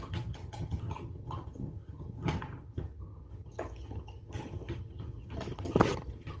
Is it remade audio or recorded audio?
remade